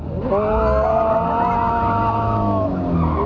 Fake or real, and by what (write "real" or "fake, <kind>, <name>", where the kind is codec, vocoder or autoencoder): real